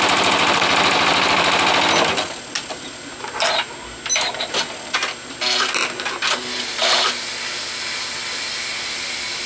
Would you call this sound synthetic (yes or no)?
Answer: no